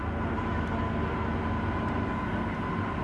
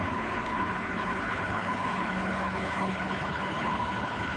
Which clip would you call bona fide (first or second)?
first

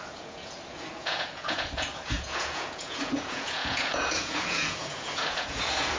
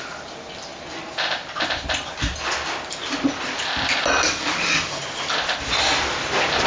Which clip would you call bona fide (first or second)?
second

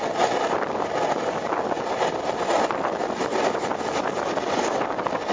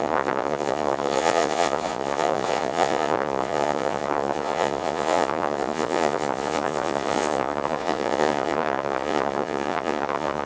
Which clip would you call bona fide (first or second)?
first